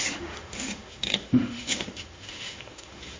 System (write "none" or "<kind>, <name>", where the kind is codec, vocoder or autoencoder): autoencoder, DAC-VAE